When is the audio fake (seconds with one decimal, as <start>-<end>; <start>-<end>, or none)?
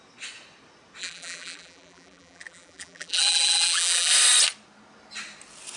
1.0-4.1